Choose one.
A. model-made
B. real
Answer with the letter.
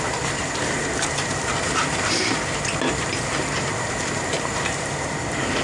A